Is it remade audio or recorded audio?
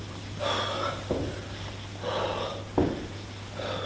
recorded